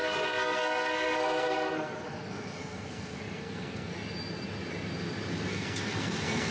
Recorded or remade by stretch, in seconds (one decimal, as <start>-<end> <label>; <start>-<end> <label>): 0.0-3.9 remade; 3.9-5.5 recorded; 5.5-6.5 remade